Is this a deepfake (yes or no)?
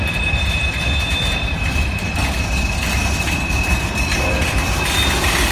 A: no